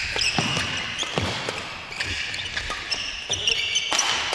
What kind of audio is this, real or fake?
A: real